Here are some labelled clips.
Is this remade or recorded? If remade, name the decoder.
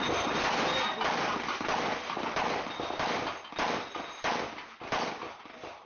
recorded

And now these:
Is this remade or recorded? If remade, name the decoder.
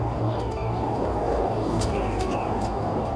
remade, codec, DAC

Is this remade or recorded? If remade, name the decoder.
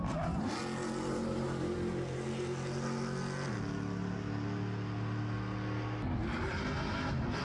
recorded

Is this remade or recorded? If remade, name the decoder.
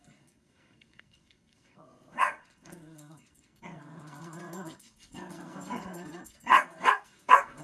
remade, codec, SNAC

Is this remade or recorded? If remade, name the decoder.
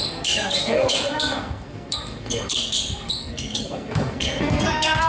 remade, codec, SNAC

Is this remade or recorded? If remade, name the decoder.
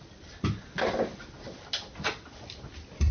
recorded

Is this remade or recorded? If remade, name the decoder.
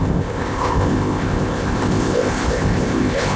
remade, codec, ZipCodec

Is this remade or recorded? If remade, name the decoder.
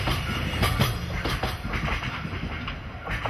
recorded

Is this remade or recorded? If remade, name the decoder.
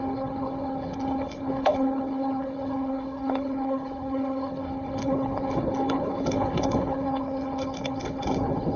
remade, codec, HILCodec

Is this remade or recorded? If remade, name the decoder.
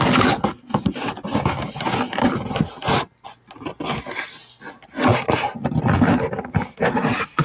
recorded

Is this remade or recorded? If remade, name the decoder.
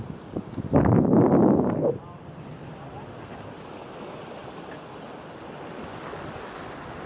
recorded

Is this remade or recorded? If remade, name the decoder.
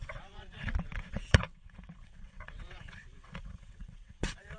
remade, vocoder, WaveNeXt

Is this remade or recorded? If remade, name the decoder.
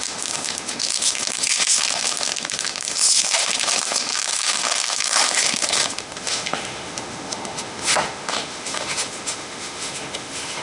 remade, autoencoder, DAC-VAE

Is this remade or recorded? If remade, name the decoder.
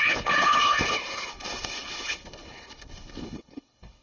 remade, codec, HILCodec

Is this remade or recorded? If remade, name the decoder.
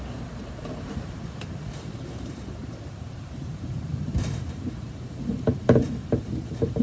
remade, vocoder, BigVGAN v2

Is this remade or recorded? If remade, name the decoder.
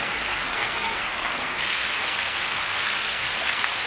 remade, codec, SNAC